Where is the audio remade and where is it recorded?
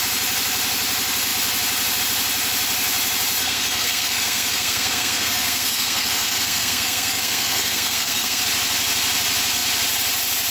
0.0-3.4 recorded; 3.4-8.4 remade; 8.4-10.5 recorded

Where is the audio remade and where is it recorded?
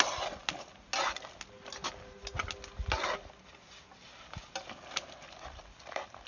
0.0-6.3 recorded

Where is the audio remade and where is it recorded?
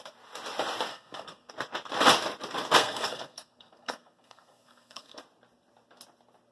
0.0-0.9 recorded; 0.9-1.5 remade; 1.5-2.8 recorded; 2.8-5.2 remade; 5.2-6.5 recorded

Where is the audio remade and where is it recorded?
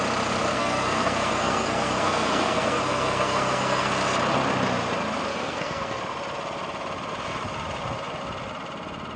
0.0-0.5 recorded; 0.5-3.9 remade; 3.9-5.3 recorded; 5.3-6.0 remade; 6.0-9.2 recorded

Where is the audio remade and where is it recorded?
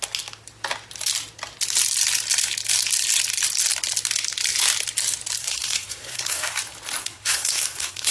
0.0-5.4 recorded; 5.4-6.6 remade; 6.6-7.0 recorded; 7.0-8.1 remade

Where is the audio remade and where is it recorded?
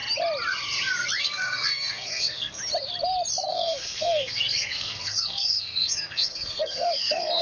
0.0-1.2 recorded; 1.2-2.6 remade; 2.6-3.5 recorded; 3.5-7.4 remade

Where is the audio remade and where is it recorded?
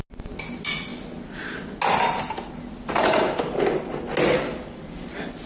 0.0-5.5 recorded